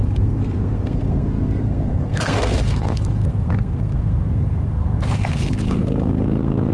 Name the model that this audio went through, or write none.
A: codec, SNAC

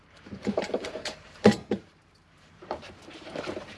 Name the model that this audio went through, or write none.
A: vocoder, BigVGAN v2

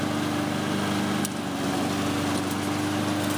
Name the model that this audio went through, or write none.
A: none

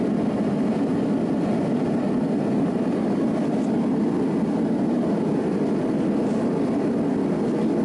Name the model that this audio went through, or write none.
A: none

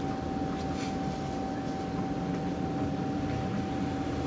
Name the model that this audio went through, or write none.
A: none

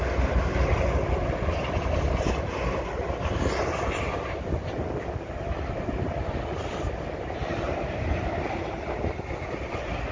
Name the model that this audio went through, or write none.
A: none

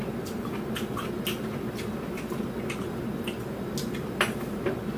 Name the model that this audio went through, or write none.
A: none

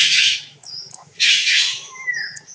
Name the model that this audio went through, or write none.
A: autoencoder, DAC-VAE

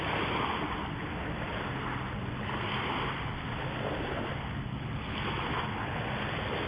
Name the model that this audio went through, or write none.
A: none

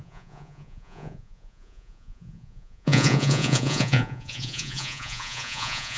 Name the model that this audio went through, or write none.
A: vocoder, Vocos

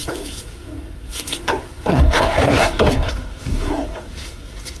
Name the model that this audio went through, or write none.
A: codec, SNAC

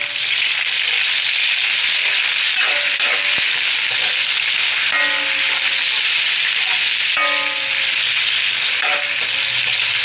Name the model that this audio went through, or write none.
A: none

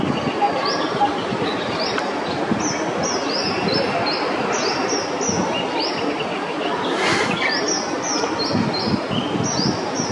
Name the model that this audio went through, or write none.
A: none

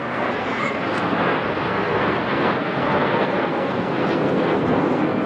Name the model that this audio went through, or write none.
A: codec, SNAC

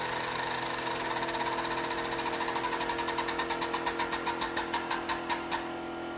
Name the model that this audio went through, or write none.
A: none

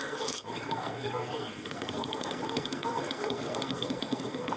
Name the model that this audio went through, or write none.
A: codec, SNAC